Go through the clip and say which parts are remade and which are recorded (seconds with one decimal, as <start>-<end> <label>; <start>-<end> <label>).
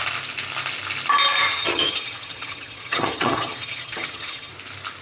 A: 0.0-1.5 recorded; 1.5-4.5 remade; 4.5-5.0 recorded